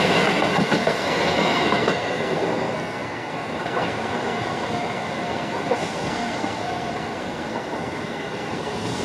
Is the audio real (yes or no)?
no